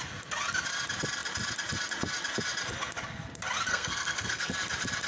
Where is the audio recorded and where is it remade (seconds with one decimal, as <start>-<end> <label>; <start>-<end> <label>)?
0.0-3.7 recorded; 3.7-4.5 remade; 4.5-5.1 recorded